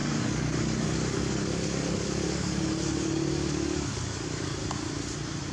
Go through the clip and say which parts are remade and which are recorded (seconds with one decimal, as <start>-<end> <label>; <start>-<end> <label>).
0.0-4.6 remade; 4.6-5.5 recorded